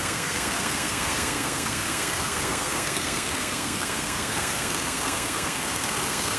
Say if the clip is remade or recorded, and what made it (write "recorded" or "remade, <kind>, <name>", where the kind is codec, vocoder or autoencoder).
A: remade, codec, SNAC